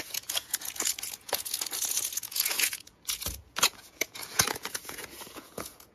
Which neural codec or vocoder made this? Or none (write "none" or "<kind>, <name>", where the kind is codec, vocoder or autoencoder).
vocoder, Vocos